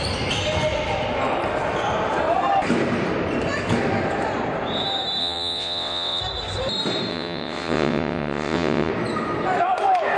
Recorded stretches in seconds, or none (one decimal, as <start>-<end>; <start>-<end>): 0.0-5.2; 6.2-7.1; 8.9-10.2